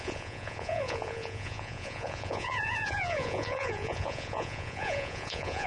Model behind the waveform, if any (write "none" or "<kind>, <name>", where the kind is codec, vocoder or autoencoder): vocoder, Vocos